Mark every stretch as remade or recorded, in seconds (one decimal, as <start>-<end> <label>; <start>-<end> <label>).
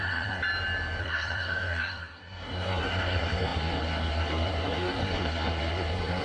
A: 0.0-0.4 remade; 0.4-1.0 recorded; 1.0-6.2 remade